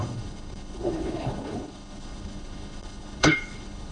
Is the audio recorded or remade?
remade